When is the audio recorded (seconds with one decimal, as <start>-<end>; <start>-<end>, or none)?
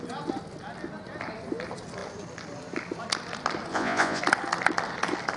0.0-3.7; 4.2-5.4